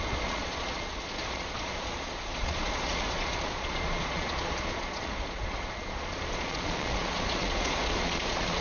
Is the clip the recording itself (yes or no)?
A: no